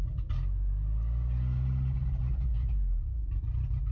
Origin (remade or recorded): recorded